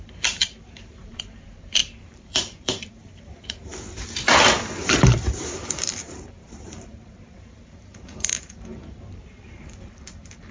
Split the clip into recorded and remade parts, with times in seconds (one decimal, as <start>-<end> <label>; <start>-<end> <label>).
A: 0.0-3.7 remade; 3.7-4.8 recorded; 4.8-10.5 remade